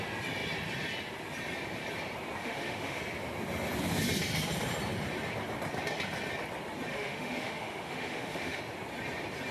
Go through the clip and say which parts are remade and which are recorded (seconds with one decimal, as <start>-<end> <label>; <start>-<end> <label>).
0.0-2.4 recorded; 2.4-3.0 remade; 3.0-6.9 recorded; 6.9-8.6 remade; 8.6-9.5 recorded